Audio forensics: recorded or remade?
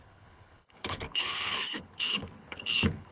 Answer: remade